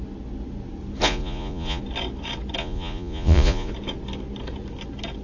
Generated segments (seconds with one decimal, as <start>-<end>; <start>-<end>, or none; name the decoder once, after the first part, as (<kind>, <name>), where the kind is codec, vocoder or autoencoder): 1.0-1.8 (vocoder, Vocos); 2.6-3.7

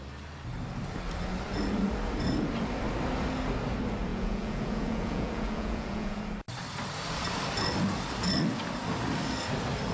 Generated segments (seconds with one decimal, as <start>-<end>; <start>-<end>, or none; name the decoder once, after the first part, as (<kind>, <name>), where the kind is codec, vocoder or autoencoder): 4.1-6.2 (vocoder, Vocos)

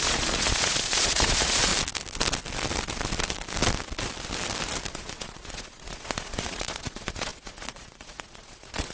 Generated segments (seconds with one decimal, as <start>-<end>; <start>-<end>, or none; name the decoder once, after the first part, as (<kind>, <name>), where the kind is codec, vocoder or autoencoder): 0.0-1.7 (vocoder, Vocos); 4.9-8.9

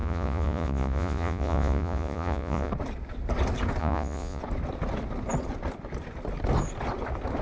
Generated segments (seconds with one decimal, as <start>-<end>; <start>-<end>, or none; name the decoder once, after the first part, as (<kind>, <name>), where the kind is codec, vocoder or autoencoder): 0.0-2.7 (vocoder, Vocos); 3.8-4.4